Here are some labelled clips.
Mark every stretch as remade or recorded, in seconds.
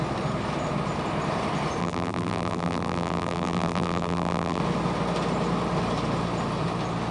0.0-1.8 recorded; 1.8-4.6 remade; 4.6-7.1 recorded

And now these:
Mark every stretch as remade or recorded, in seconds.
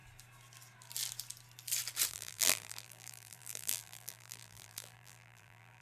0.0-2.1 recorded; 2.1-5.8 remade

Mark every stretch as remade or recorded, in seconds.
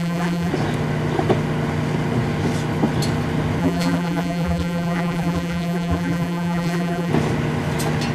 0.0-0.5 remade; 0.5-3.6 recorded; 3.6-7.1 remade; 7.1-8.1 recorded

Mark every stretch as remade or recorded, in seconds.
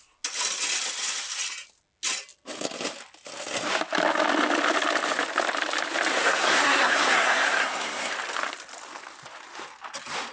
0.0-6.1 recorded; 6.1-8.1 remade; 8.1-10.3 recorded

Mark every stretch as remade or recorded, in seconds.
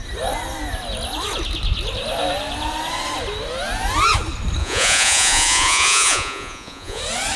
0.0-4.6 recorded; 4.6-7.0 remade; 7.0-7.4 recorded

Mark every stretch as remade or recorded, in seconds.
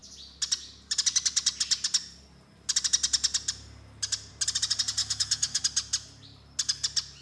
0.0-5.0 recorded; 5.0-5.6 remade; 5.6-7.2 recorded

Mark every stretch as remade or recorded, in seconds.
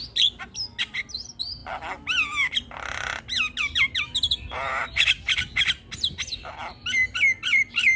0.0-8.0 recorded